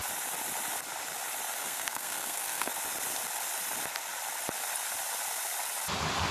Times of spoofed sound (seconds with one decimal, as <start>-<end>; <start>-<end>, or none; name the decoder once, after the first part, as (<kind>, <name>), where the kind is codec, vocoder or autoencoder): 1.6-2.7 (codec, SNAC)